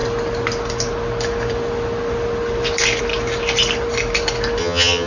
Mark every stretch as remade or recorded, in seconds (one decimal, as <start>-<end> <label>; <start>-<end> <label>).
0.0-4.6 recorded; 4.6-5.1 remade